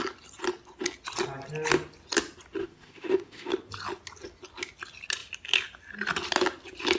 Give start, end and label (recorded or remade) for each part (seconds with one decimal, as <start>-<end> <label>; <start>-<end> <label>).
0.0-2.6 recorded; 2.6-3.5 remade; 3.5-7.0 recorded

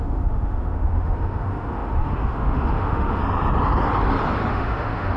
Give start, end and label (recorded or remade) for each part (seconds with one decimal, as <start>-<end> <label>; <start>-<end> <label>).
0.0-3.2 remade; 3.2-4.5 recorded; 4.5-5.2 remade